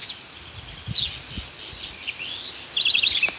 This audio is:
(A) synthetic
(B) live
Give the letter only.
B